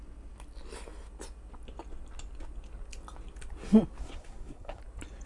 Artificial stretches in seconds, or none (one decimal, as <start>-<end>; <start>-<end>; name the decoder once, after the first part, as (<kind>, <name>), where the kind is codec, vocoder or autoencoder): 4.0-4.8 (codec, SNAC)